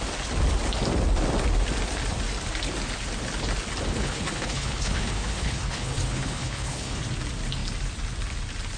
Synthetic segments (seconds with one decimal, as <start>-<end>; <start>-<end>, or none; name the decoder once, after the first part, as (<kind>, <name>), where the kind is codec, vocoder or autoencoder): 3.9-7.0 (codec, HILCodec)